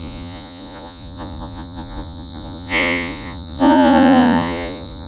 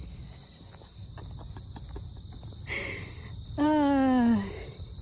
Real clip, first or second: second